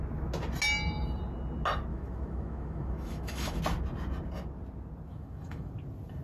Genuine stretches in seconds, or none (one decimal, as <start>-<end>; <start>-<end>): 0.0-1.9; 3.6-5.1; 5.7-6.2